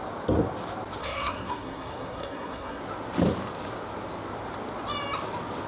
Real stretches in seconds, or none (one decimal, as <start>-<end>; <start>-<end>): 0.0-1.0; 2.8-5.7